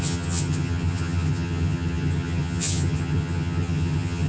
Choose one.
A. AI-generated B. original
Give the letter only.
A